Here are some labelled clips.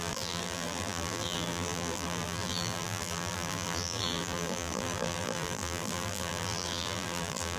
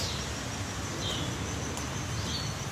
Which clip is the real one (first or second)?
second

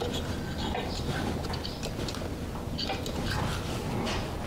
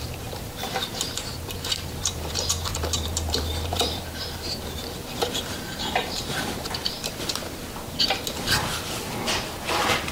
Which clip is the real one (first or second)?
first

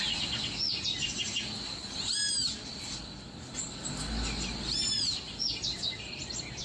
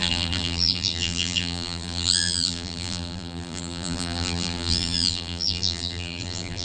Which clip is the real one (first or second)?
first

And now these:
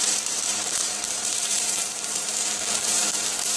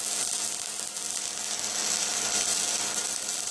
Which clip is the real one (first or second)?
second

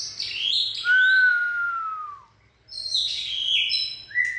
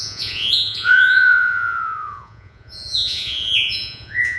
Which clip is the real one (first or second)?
first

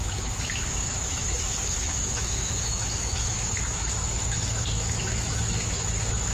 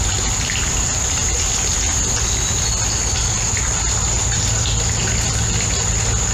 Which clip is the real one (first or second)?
second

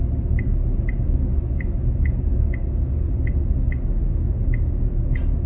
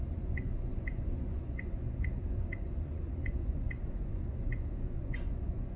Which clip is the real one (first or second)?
first